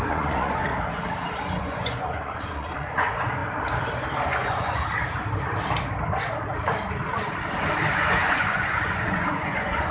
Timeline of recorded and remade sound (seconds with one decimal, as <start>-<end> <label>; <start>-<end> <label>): 0.0-0.7 remade; 0.7-1.6 recorded; 1.6-3.4 remade; 3.4-4.3 recorded; 4.3-4.8 remade; 4.8-7.9 recorded; 7.9-9.9 remade